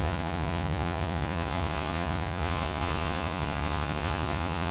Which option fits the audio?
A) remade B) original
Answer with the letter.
A